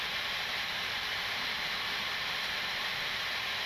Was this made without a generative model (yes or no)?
no